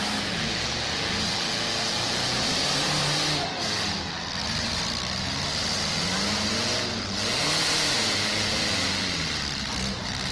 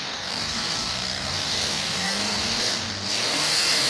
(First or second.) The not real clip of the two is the second